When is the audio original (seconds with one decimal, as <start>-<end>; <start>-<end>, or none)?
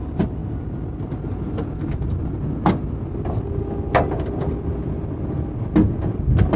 0.0-6.6